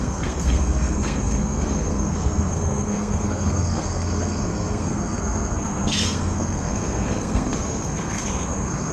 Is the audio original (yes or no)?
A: no